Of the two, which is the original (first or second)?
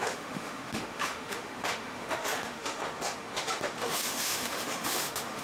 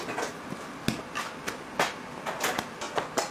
second